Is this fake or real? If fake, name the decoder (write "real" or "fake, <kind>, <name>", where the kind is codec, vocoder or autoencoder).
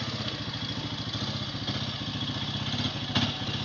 real